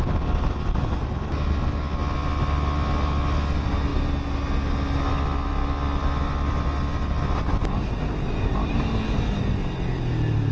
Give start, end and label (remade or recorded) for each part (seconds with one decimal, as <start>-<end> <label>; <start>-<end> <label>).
0.0-10.5 recorded